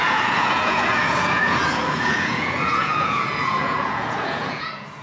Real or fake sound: fake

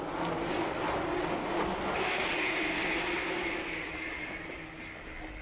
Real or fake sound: real